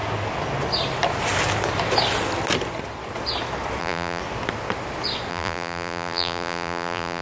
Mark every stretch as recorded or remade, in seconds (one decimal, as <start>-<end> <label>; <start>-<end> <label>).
0.0-3.8 recorded; 3.8-4.2 remade; 4.2-5.3 recorded; 5.3-7.2 remade